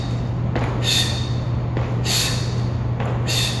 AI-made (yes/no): no